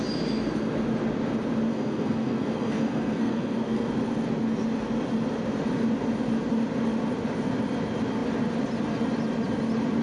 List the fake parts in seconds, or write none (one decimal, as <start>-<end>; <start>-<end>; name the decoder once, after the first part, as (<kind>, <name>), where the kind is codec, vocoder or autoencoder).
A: 1.7-3.9 (codec, SNAC)